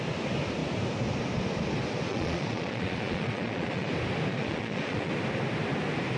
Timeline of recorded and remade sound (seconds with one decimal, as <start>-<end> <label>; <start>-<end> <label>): 0.0-2.1 recorded; 2.1-3.9 remade; 3.9-4.3 recorded; 4.3-5.1 remade; 5.1-6.2 recorded